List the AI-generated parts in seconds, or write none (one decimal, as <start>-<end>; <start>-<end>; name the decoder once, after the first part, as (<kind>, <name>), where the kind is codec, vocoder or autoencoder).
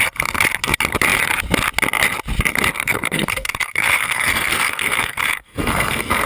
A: 2.8-6.3 (codec, SNAC)